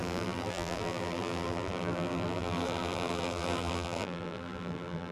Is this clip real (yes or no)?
no